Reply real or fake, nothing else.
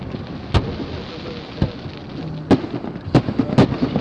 real